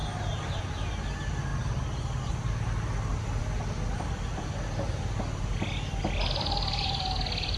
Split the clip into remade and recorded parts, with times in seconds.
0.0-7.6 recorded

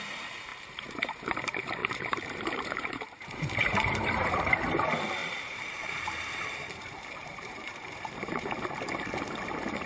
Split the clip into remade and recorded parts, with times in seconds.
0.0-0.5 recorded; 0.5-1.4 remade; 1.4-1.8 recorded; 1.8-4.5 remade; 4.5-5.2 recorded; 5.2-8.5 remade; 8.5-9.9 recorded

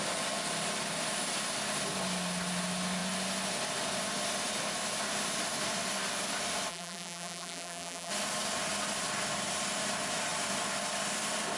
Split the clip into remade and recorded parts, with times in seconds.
0.0-6.7 recorded; 6.7-8.1 remade; 8.1-11.6 recorded

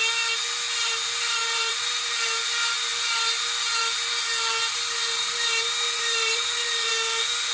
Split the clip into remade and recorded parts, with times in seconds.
0.0-1.4 recorded; 1.4-2.1 remade; 2.1-4.6 recorded; 4.6-6.9 remade; 6.9-7.5 recorded

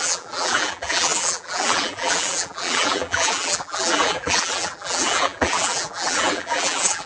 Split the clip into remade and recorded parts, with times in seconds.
0.0-7.1 remade